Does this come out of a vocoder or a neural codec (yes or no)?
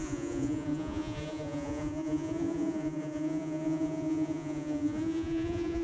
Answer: yes